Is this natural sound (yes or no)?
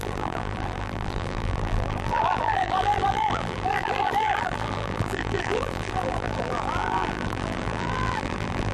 no